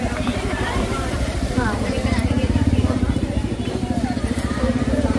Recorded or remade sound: remade